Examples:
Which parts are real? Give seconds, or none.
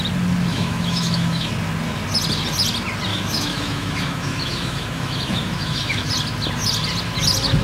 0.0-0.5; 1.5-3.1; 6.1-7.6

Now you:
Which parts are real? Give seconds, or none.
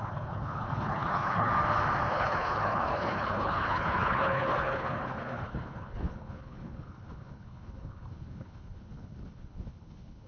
1.5-2.1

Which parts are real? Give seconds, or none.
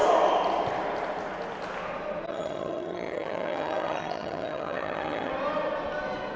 0.0-2.3; 5.3-6.4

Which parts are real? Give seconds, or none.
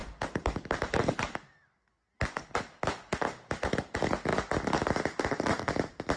0.0-6.2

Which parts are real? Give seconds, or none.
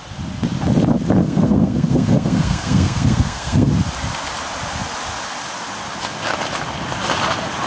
0.0-1.2; 3.7-7.7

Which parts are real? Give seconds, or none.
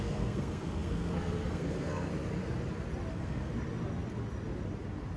2.1-3.1; 3.5-5.2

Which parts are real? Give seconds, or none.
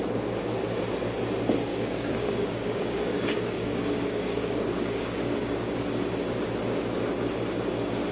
0.0-1.7; 5.8-8.1